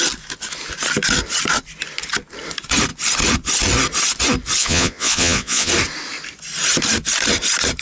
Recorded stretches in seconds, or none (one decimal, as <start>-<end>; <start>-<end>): 0.0-4.6; 5.7-7.8